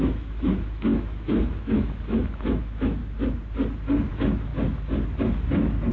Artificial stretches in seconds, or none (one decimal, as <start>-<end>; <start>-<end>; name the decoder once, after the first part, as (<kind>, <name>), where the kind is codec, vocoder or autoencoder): 0.0-3.0 (autoencoder, DAC-VAE); 4.1-4.5